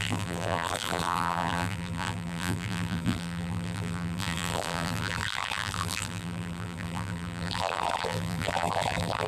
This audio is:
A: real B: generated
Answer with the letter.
B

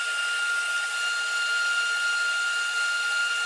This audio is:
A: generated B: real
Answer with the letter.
B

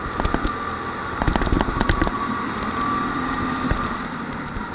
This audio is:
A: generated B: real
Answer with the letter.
B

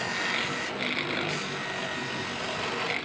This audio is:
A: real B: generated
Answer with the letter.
A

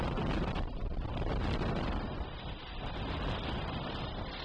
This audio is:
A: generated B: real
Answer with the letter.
B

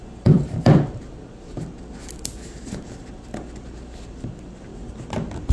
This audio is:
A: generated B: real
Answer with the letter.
B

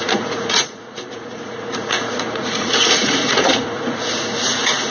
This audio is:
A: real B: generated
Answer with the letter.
B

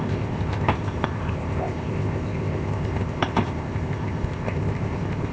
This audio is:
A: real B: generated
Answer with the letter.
B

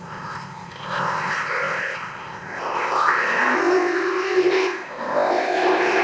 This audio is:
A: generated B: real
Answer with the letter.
A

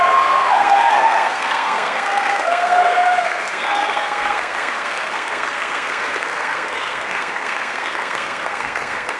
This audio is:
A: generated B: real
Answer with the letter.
A